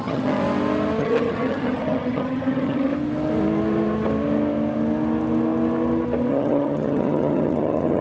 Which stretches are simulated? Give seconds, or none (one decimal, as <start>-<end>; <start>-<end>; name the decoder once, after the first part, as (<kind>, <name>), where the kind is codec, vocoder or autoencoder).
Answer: 0.0-0.4 (vocoder, HiFi-GAN); 1.0-2.9; 6.3-8.0